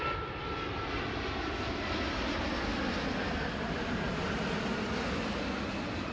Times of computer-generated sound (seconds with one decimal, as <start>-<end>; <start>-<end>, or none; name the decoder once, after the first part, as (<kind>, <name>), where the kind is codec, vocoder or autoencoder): 2.7-5.3 (vocoder, BigVGAN v2)